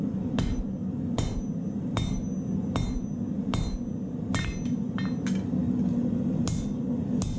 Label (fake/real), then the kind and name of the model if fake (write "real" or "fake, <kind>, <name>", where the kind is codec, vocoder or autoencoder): real